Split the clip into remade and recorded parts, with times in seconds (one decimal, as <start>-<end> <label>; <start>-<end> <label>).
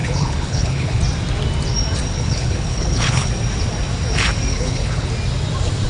0.0-1.0 remade; 1.0-2.1 recorded; 2.1-3.3 remade; 3.3-4.5 recorded; 4.5-5.1 remade; 5.1-5.9 recorded